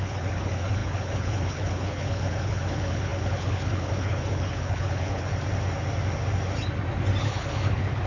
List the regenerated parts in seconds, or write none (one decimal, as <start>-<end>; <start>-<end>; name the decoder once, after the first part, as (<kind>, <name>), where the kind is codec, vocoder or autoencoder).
0.0-5.3 (codec, HILCodec); 7.2-8.1